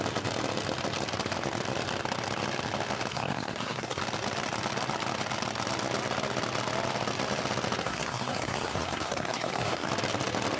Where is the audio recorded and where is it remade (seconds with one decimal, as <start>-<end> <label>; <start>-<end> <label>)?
0.0-3.1 recorded; 3.1-4.0 remade; 4.0-7.8 recorded; 7.8-9.9 remade; 9.9-10.6 recorded